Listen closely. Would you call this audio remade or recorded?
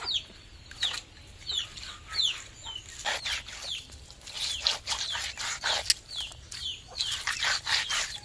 recorded